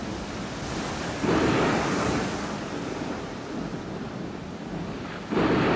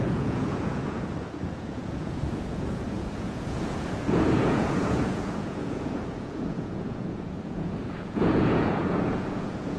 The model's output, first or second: second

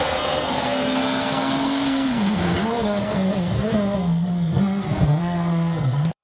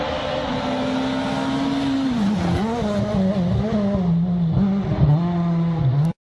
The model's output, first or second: first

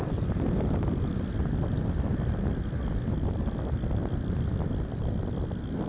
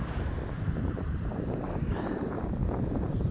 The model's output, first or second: second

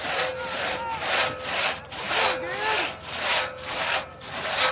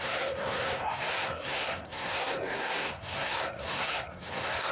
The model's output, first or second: second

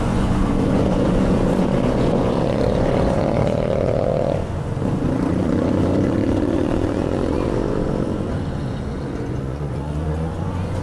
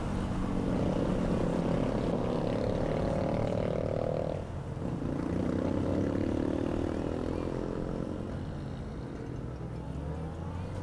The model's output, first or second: first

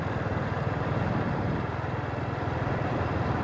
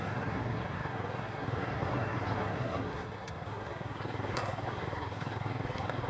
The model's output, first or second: second